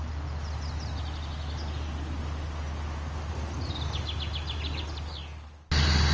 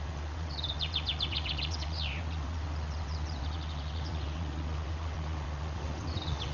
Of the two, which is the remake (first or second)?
second